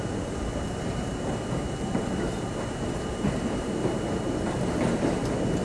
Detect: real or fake fake